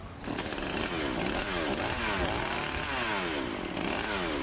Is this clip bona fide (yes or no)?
yes